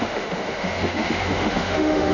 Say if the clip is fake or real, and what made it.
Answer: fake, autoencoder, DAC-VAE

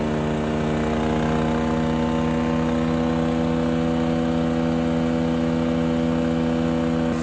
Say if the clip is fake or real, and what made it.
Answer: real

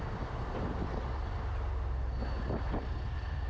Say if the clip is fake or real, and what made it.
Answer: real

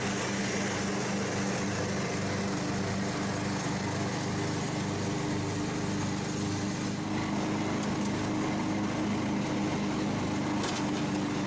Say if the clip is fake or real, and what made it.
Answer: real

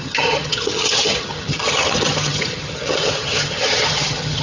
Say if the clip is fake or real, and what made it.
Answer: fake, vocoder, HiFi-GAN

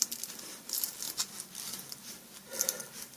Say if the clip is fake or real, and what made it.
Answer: real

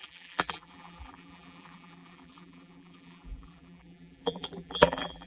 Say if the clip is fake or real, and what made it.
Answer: fake, vocoder, BigVGAN v2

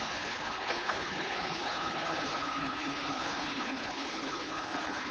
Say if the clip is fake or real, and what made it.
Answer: fake, codec, HILCodec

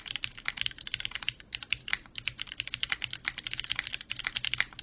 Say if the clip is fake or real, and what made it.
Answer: real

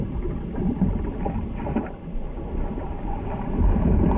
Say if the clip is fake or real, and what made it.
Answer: fake, vocoder, BigVGAN v2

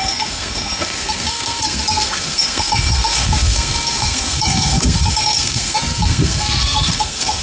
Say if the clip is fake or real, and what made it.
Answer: fake, codec, SNAC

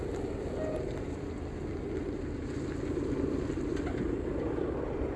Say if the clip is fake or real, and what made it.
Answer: real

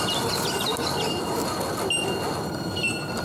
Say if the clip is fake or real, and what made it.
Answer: real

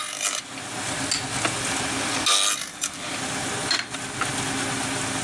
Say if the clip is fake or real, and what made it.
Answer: real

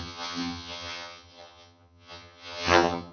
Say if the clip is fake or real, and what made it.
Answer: fake, vocoder, HiFi-GAN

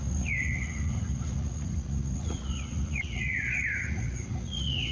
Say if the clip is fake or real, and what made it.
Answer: fake, vocoder, Vocos